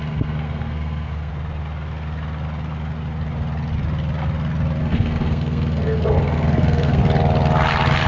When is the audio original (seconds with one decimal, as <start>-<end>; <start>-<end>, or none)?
1.3-4.8; 7.0-8.1